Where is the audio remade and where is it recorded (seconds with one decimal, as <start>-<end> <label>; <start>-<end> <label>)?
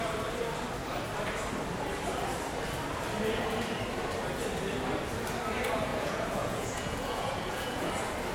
0.0-5.9 recorded; 5.9-7.9 remade; 7.9-8.3 recorded